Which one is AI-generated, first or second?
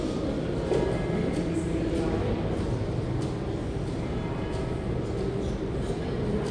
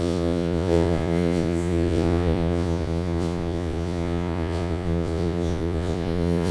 second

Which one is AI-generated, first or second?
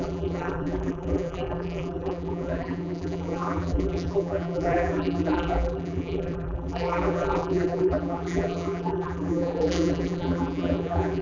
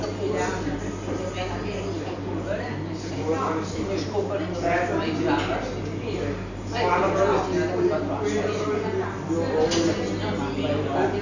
first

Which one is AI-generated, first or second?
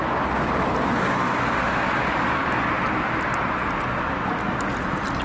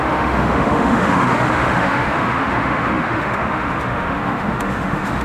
second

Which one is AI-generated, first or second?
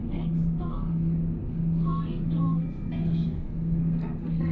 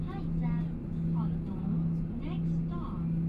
first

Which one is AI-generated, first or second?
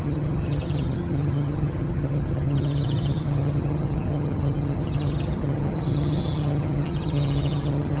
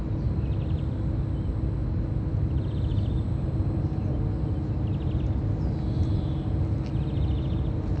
first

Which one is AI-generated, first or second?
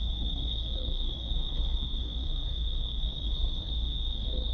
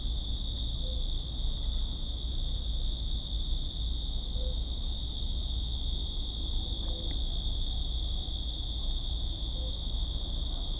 first